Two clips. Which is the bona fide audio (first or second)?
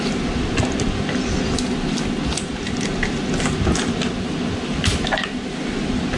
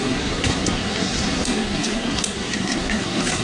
first